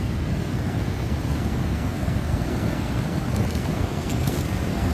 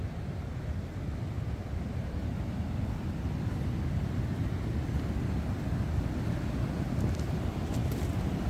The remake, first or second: first